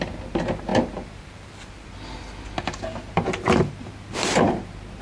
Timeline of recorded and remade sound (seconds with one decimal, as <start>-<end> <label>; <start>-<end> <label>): 0.0-5.0 recorded